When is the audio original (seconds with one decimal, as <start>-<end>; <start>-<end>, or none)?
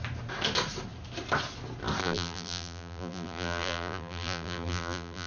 0.0-2.0